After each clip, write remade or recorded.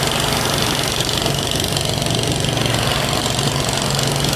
recorded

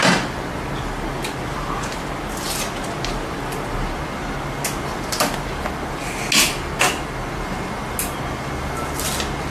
recorded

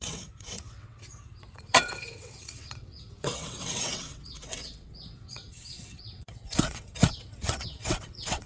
remade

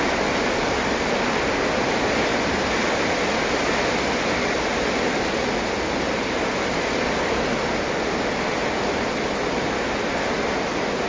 recorded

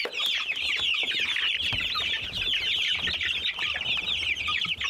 remade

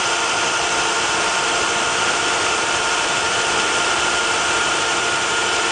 remade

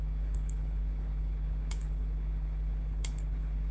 remade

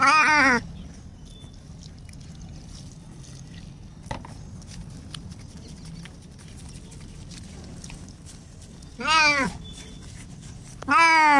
recorded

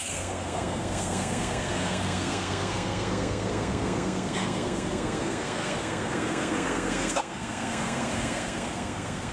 remade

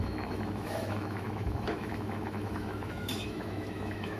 remade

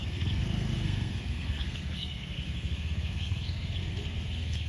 remade